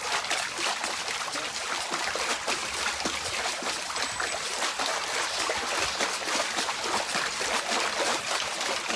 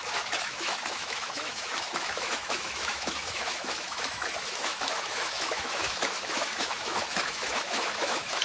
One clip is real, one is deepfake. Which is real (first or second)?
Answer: first